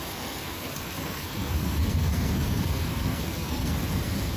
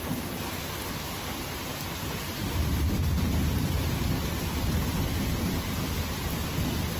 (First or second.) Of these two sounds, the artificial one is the first